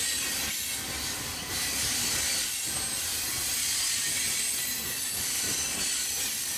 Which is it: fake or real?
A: real